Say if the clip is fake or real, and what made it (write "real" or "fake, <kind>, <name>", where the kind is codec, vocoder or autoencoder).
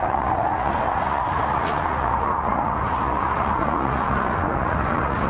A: fake, vocoder, Vocos